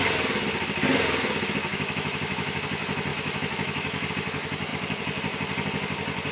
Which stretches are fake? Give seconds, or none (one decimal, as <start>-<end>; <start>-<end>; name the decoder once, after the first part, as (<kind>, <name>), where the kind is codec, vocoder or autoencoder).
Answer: 1.7-2.6 (autoencoder, DAC-VAE); 3.1-4.1